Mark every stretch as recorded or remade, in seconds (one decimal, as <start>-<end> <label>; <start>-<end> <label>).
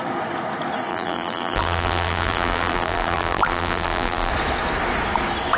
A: 0.0-0.9 recorded; 0.9-4.3 remade; 4.3-5.6 recorded